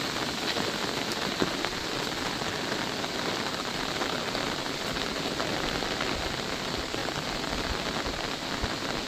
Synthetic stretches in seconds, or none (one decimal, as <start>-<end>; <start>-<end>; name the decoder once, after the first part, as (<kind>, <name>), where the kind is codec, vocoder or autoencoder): none